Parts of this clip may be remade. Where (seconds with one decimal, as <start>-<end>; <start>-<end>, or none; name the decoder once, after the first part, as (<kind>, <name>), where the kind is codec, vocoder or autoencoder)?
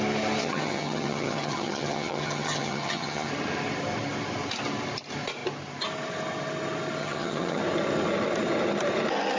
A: 0.4-3.3 (vocoder, HiFi-GAN); 7.0-7.6